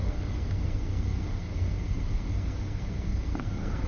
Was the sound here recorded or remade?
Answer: remade